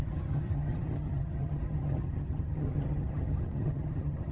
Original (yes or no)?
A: no